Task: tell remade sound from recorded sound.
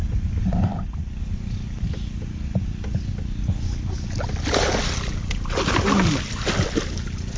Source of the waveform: recorded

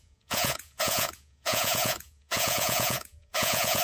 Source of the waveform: remade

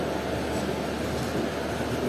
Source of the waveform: recorded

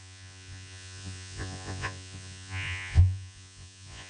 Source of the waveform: remade